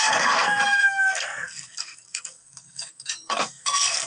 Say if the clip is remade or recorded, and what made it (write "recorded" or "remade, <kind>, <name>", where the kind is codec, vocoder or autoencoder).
remade, codec, SNAC